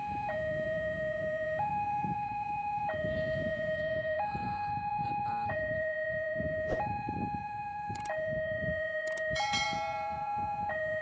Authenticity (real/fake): fake